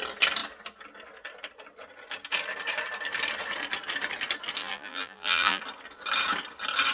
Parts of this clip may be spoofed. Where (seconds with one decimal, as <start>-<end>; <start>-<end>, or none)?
4.6-5.6